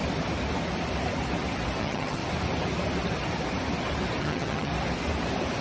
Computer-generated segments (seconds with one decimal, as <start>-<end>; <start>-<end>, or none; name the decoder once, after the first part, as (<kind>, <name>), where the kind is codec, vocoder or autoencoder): 1.8-2.2 (vocoder, HiFi-GAN); 4.2-4.7